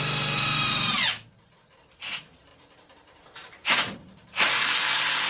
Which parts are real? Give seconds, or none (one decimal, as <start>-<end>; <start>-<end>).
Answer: 1.1-1.9